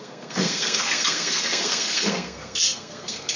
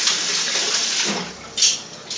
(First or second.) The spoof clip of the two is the first